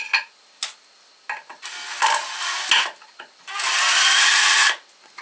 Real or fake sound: real